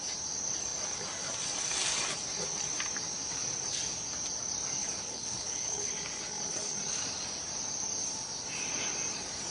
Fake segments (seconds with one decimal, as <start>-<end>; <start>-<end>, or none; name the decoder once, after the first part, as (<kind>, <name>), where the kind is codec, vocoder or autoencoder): 4.8-5.9 (codec, HILCodec)